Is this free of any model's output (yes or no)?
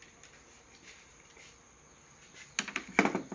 yes